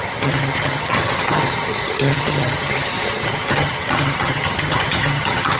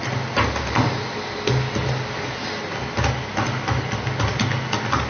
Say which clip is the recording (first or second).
second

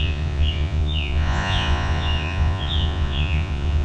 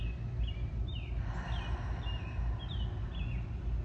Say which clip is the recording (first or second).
second